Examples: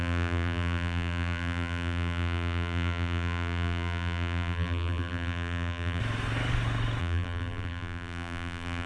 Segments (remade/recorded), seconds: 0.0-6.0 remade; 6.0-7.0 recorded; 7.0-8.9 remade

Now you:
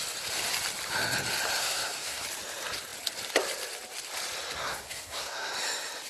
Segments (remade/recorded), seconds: 0.0-1.6 recorded; 1.6-2.2 remade; 2.2-4.6 recorded; 4.6-5.5 remade; 5.5-6.1 recorded

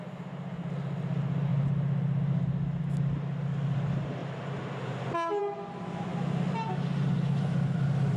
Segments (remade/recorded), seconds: 0.0-8.2 recorded